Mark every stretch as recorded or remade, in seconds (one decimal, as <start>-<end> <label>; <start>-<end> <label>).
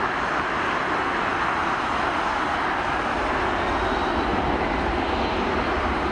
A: 0.0-1.6 recorded; 1.6-3.3 remade; 3.3-4.3 recorded; 4.3-4.8 remade; 4.8-6.1 recorded